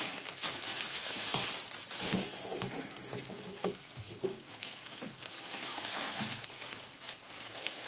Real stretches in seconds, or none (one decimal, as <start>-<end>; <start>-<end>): 1.5-2.0